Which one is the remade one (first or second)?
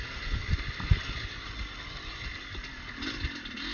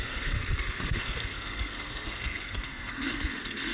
second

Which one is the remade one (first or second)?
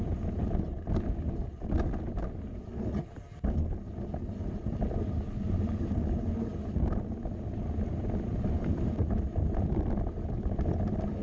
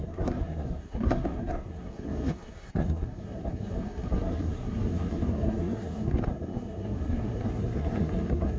second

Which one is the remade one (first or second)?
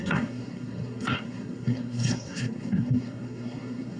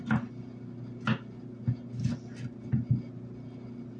first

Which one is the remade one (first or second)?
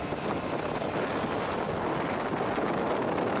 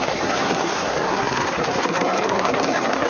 second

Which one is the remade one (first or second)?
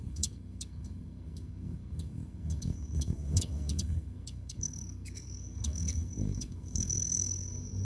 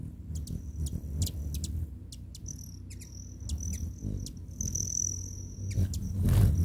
first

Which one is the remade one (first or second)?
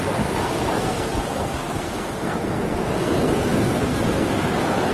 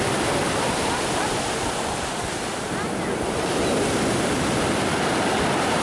first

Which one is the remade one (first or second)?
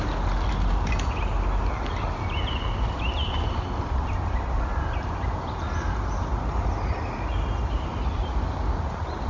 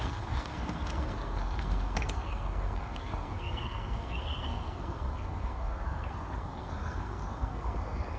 second